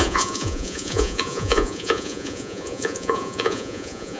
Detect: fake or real fake